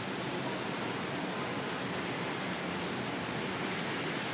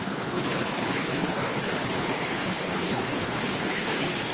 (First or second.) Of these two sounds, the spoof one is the second